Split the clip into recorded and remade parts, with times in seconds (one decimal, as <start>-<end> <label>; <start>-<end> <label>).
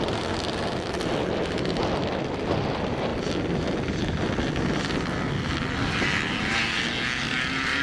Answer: 0.0-7.8 recorded